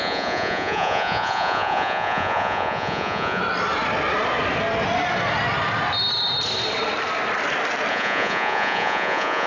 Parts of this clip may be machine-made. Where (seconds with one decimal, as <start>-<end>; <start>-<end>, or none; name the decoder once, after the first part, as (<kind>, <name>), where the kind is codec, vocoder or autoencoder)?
0.0-3.4 (vocoder, Vocos); 7.9-9.5